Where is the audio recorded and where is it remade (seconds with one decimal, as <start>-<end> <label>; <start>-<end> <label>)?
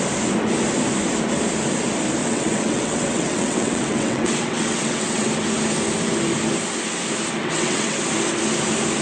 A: 0.0-2.2 recorded; 2.2-5.3 remade; 5.3-7.4 recorded; 7.4-8.0 remade; 8.0-9.0 recorded